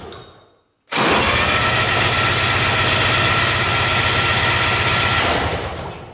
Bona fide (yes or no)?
yes